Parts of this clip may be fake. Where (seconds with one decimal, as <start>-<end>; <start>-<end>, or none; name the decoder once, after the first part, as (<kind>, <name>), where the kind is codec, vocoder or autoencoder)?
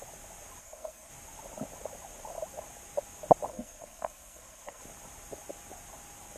0.6-1.1 (codec, SNAC); 3.5-4.8